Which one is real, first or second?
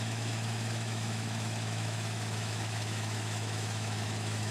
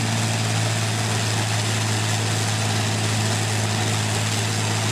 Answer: second